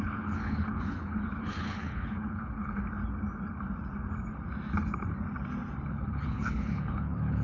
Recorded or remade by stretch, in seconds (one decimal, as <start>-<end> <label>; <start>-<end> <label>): 0.0-2.8 remade; 2.8-5.9 recorded; 5.9-7.4 remade